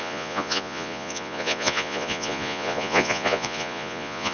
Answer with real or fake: fake